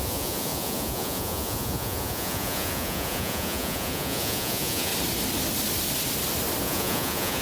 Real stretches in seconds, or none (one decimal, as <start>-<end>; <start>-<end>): 4.9-6.6